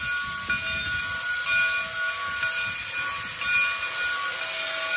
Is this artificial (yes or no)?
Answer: no